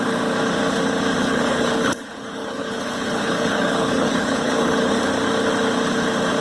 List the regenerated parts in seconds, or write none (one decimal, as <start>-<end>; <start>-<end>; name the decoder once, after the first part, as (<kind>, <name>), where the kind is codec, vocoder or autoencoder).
1.2-5.0 (codec, HILCodec)